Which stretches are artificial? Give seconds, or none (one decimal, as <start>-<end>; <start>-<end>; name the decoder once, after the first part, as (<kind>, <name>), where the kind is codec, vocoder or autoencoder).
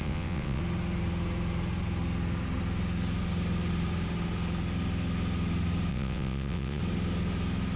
0.0-0.6 (vocoder, WaveNeXt); 5.9-6.8